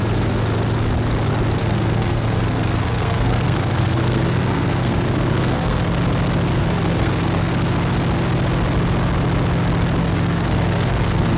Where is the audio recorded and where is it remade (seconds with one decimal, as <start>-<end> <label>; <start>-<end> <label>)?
0.0-1.6 recorded; 1.6-6.0 remade; 6.0-6.6 recorded; 6.6-7.5 remade; 7.5-10.0 recorded; 10.0-11.4 remade